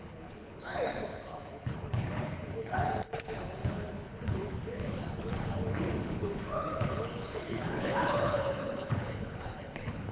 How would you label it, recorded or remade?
remade